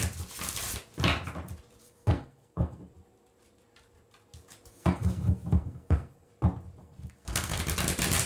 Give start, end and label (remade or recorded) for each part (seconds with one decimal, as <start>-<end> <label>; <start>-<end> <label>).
0.0-1.8 recorded; 1.8-2.8 remade; 2.8-4.7 recorded; 4.7-6.3 remade; 6.3-6.8 recorded; 6.8-7.6 remade; 7.6-8.3 recorded